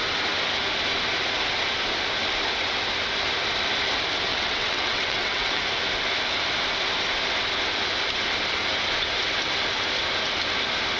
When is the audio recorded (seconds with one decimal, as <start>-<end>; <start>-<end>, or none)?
0.0-4.3; 5.6-11.0